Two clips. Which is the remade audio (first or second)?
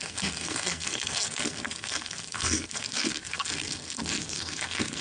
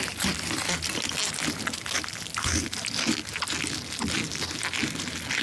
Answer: first